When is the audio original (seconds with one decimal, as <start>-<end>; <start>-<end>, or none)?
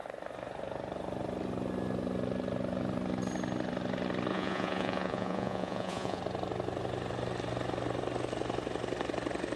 0.0-4.3; 6.2-9.6